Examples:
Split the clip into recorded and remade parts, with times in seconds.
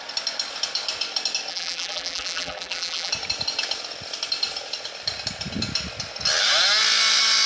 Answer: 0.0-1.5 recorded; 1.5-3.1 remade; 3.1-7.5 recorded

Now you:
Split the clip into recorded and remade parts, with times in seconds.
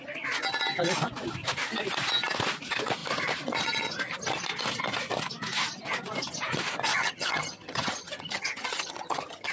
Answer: 0.0-6.9 recorded; 6.9-9.5 remade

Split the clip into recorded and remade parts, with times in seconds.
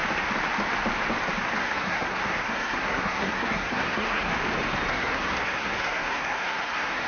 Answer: 0.0-1.6 recorded; 1.6-4.3 remade; 4.3-4.9 recorded; 4.9-7.1 remade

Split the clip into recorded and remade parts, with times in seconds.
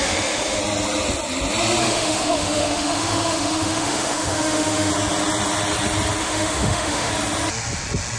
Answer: 0.0-0.6 remade; 0.6-1.8 recorded; 1.8-4.9 remade; 4.9-6.2 recorded; 6.2-7.1 remade; 7.1-8.2 recorded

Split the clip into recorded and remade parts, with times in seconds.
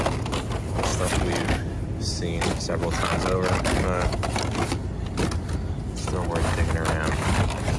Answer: 0.0-7.8 recorded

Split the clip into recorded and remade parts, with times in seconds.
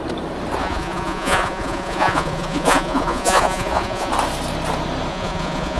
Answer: 0.0-0.6 recorded; 0.6-4.1 remade; 4.1-5.1 recorded; 5.1-5.8 remade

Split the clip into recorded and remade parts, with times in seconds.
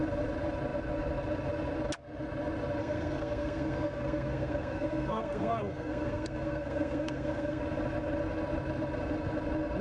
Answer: 0.0-2.8 recorded; 2.8-7.6 remade; 7.6-9.8 recorded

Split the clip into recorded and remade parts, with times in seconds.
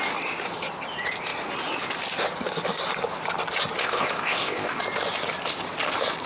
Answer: 0.0-3.8 recorded; 3.8-4.8 remade; 4.8-6.3 recorded